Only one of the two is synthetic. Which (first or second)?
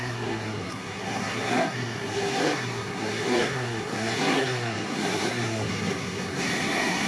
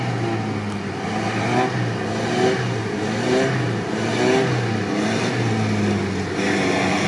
first